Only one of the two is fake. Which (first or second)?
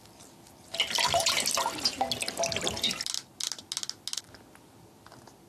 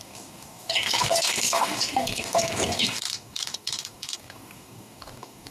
second